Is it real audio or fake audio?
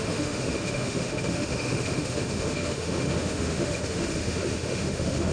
fake